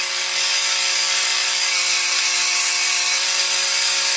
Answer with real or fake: fake